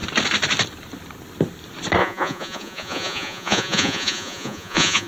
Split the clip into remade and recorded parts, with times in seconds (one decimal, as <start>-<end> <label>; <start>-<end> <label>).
0.0-2.0 recorded; 2.0-5.1 remade